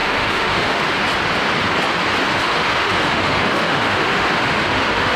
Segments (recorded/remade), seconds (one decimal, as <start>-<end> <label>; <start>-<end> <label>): 0.0-0.8 remade; 0.8-2.3 recorded; 2.3-5.2 remade